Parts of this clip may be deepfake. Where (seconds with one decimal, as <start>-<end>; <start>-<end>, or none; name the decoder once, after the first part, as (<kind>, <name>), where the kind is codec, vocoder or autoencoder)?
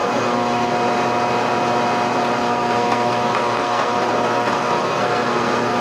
0.0-0.7 (codec, SNAC); 2.4-5.8